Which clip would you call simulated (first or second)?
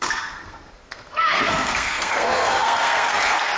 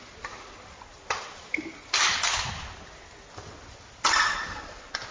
first